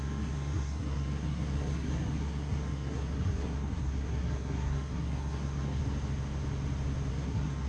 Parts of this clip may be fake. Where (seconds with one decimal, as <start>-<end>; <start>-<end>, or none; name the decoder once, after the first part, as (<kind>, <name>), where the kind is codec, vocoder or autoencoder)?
0.0-5.8 (codec, SNAC); 7.1-7.7